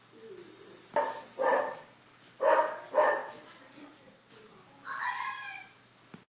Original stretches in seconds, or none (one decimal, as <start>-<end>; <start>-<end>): 0.0-6.3